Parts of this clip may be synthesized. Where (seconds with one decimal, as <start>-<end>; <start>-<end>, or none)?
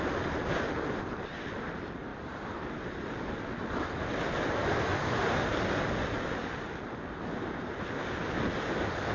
4.6-5.1